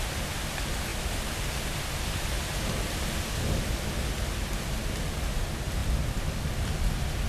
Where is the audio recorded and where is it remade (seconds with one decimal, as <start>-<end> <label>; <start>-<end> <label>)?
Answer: 0.0-7.3 recorded